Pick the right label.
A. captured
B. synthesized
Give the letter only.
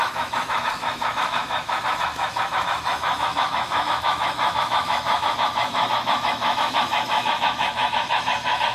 B